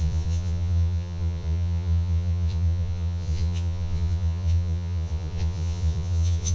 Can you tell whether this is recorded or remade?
remade